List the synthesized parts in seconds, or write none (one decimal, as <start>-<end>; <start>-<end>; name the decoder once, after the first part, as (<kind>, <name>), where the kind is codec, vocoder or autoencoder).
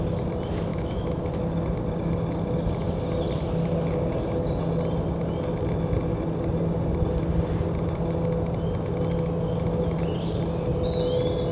0.7-1.2 (autoencoder, DAC-VAE)